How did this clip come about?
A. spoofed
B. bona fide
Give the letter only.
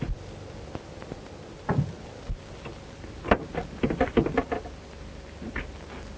B